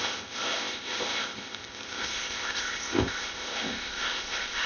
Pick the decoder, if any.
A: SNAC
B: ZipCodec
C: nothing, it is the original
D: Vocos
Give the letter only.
B